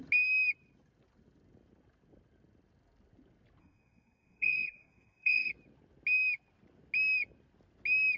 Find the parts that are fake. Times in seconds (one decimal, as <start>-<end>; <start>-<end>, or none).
3.6-5.5